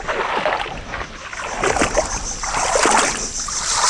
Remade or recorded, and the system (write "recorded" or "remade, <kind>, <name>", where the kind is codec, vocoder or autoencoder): recorded